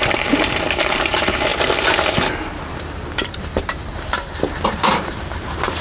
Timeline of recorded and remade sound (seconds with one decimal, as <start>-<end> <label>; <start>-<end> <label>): 0.0-1.5 remade; 1.5-2.3 recorded; 2.3-5.8 remade